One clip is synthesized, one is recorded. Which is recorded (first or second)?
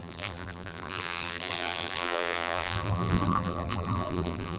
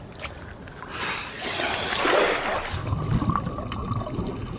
second